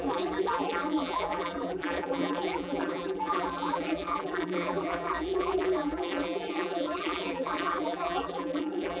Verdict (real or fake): fake